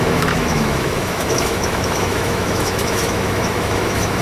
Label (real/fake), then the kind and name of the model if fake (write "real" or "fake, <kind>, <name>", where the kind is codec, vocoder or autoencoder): fake, autoencoder, DAC-VAE